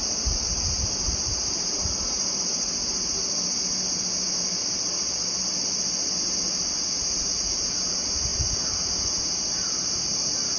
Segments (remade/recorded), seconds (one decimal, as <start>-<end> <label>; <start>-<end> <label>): 0.0-3.2 remade; 3.2-7.0 recorded; 7.0-10.6 remade